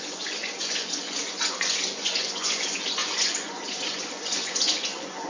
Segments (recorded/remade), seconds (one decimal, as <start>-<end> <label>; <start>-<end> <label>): 0.0-5.3 remade